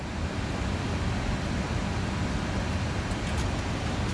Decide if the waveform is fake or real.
real